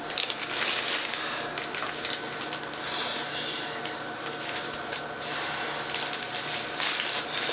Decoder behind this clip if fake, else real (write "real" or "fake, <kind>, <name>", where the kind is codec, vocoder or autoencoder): real